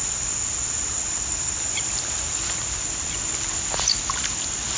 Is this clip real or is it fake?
real